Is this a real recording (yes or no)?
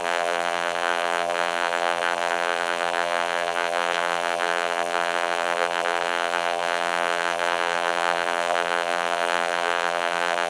no